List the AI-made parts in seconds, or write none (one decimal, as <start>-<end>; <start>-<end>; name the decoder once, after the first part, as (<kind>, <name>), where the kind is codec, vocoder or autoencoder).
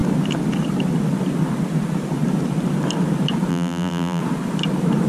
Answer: 3.5-4.2 (vocoder, BigVGAN v2)